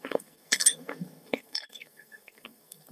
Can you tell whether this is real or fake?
fake